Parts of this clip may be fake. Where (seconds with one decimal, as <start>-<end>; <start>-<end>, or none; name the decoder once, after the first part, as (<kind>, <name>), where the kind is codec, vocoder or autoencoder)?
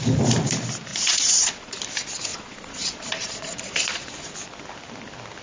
0.9-1.7 (vocoder, Vocos); 2.3-4.3